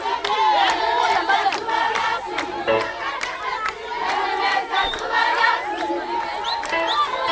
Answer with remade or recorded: recorded